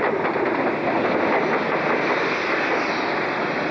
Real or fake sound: real